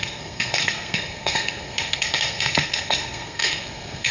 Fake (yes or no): yes